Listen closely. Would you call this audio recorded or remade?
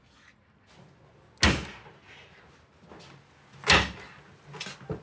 recorded